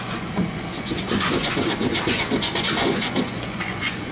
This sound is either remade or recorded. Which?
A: remade